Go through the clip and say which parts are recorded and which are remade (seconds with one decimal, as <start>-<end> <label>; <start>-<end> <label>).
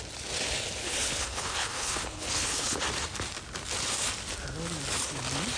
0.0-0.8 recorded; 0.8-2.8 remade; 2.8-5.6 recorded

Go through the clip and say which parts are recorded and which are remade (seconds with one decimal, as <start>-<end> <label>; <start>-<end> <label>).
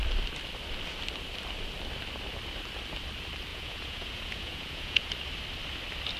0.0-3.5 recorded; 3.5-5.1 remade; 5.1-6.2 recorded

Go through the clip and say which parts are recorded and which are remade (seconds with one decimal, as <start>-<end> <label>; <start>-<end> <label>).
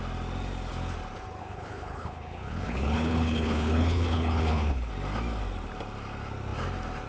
0.0-1.4 recorded; 1.4-4.9 remade; 4.9-7.1 recorded